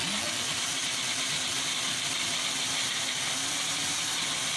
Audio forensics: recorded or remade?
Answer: recorded